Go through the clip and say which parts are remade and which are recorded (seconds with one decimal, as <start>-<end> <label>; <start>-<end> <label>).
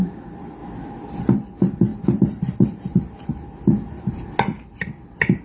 0.0-5.4 recorded